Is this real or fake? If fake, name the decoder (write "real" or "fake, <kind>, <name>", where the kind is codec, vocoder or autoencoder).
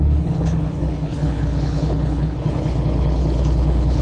fake, codec, HILCodec